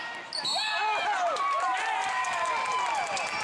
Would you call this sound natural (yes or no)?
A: yes